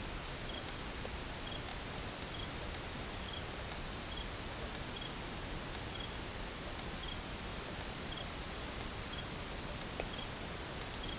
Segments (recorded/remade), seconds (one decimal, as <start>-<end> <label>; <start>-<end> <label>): 0.0-7.5 recorded; 7.5-9.2 remade; 9.2-11.2 recorded